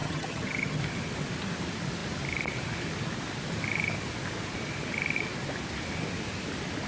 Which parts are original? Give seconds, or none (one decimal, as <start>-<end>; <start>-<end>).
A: 0.8-6.9